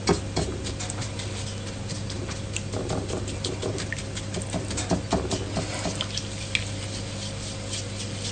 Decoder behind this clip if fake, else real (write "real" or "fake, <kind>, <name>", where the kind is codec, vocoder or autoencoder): real